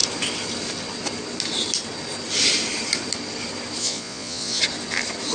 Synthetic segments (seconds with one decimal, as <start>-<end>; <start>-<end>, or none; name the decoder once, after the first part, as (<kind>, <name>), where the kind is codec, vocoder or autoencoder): 3.8-4.6 (vocoder, Vocos)